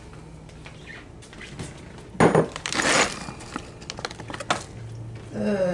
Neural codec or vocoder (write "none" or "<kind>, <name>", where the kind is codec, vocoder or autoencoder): none